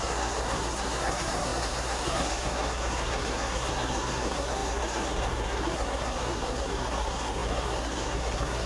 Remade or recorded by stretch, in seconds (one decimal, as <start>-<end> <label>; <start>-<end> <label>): 0.0-8.7 remade